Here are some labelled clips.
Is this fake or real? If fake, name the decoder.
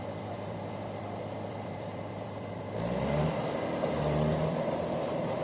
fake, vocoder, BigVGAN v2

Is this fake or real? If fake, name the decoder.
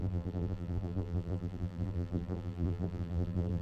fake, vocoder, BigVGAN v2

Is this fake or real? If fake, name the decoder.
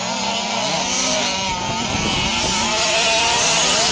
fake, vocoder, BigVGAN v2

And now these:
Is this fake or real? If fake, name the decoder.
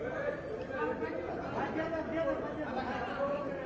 fake, vocoder, BigVGAN v2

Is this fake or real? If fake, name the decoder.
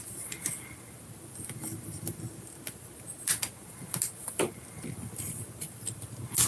real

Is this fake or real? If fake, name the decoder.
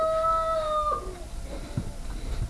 real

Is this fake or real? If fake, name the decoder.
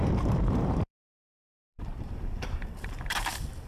fake, vocoder, BigVGAN v2